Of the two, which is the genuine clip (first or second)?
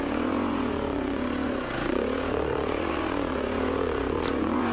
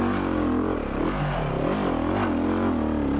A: second